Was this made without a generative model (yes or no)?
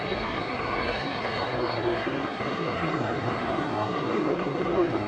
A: no